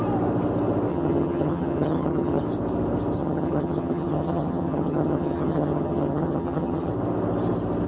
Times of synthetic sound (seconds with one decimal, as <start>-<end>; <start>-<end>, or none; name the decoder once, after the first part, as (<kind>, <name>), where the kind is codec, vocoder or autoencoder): 0.9-2.4 (vocoder, HiFi-GAN); 3.2-6.9